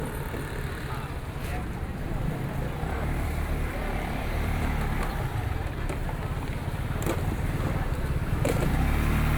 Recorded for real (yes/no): no